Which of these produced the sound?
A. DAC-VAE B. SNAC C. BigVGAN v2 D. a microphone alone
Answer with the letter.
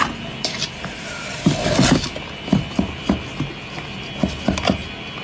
C